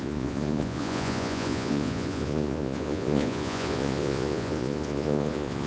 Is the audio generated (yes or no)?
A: yes